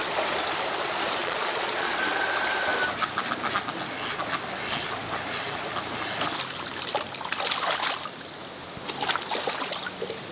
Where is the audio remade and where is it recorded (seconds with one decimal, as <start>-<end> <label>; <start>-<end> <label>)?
0.0-1.2 recorded; 1.2-1.9 remade; 1.9-10.3 recorded